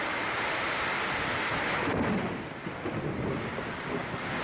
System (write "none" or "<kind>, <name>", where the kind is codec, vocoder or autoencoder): none